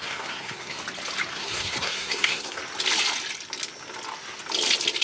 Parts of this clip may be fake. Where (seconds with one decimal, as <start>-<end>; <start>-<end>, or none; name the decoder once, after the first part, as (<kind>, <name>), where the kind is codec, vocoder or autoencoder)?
0.0-0.8 (codec, SNAC); 1.3-2.6